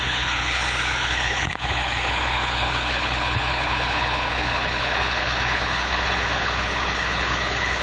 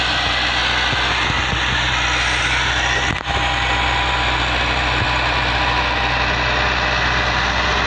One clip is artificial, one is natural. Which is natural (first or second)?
second